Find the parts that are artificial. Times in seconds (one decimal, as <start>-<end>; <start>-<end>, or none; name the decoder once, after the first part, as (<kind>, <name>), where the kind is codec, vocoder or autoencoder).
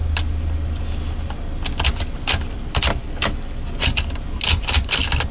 3.0-3.8 (codec, DAC)